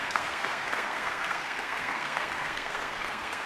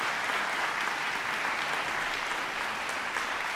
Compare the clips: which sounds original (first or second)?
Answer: second